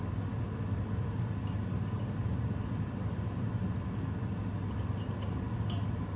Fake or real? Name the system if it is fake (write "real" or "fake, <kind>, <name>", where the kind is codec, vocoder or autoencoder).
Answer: real